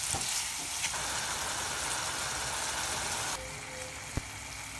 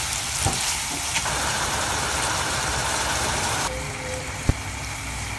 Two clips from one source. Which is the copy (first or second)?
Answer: second